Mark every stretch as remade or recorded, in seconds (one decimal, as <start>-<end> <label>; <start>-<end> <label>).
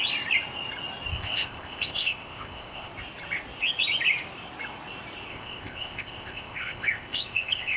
0.0-1.1 recorded; 1.1-2.9 remade; 2.9-5.3 recorded; 5.3-7.8 remade